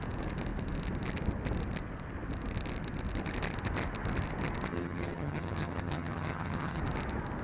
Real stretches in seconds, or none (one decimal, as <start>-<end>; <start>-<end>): 0.0-4.7; 6.8-7.4